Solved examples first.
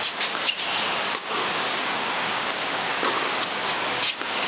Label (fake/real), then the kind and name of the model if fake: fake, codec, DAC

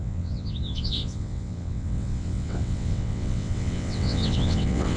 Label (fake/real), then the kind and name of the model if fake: fake, vocoder, WaveNeXt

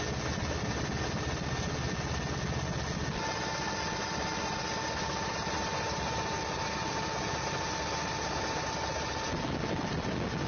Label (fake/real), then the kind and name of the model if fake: real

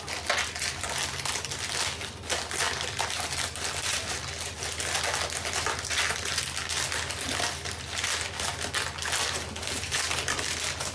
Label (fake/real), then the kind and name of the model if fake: real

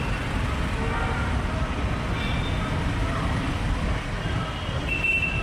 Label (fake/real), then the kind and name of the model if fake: real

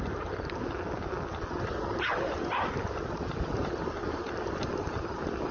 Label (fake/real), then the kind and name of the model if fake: real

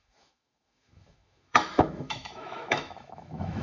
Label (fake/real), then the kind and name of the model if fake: fake, autoencoder, DAC-VAE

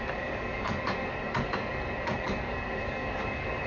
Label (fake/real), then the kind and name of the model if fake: fake, codec, DAC